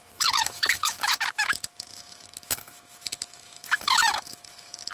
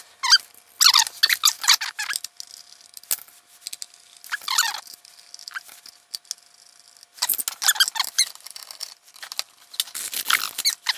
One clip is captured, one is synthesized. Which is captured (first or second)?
second